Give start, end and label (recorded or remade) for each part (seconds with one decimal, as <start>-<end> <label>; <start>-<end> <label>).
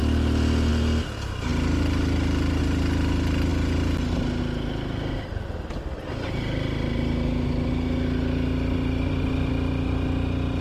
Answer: 0.0-10.6 recorded